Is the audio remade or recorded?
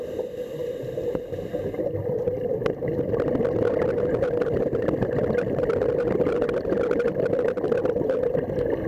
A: recorded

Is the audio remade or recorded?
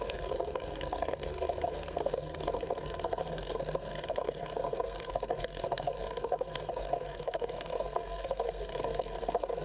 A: remade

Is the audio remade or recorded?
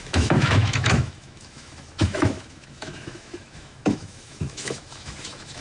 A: remade